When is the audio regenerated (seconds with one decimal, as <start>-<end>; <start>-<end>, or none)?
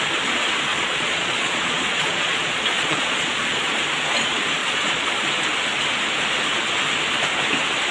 0.7-3.8; 4.6-5.2